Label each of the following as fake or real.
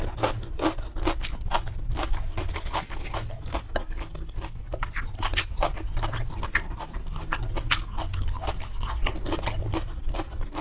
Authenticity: real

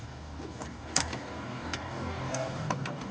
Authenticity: fake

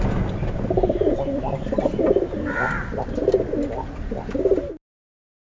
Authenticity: real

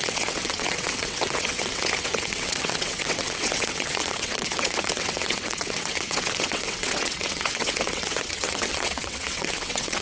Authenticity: fake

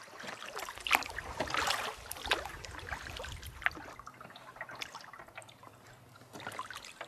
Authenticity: real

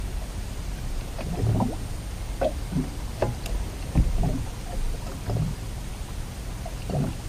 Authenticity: real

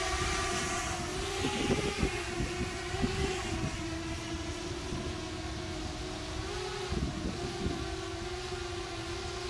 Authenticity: real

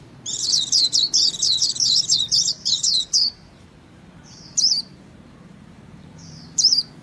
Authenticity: fake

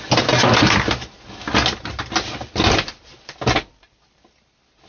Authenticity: real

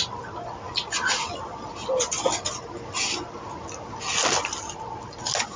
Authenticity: real